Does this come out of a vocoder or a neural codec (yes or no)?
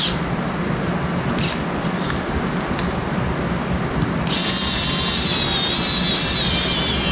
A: no